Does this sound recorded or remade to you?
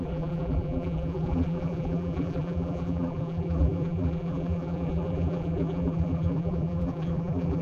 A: remade